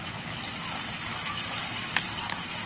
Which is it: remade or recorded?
recorded